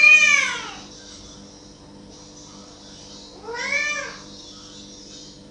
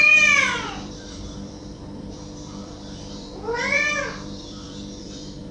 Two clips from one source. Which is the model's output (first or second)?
second